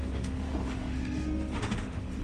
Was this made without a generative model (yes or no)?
no